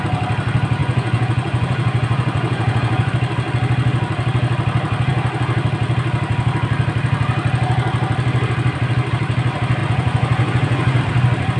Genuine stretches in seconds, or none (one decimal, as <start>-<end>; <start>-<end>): 0.0-0.8; 3.1-9.8; 11.0-11.6